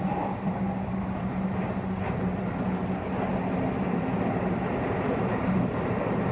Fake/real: real